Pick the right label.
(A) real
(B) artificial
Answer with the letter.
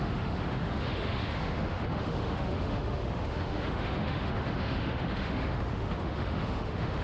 B